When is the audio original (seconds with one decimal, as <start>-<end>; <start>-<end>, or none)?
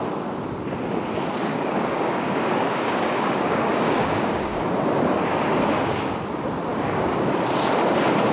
0.0-1.5; 4.7-5.3; 6.1-6.7; 7.3-8.3